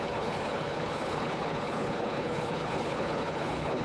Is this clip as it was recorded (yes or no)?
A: no